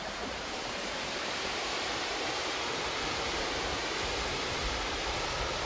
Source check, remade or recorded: remade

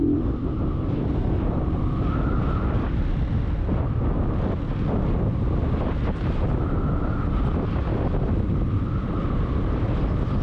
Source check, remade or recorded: recorded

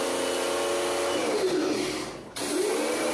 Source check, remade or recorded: recorded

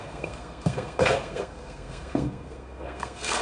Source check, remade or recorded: remade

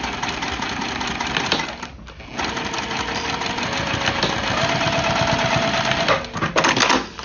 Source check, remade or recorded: recorded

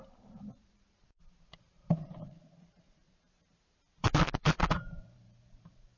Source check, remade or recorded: remade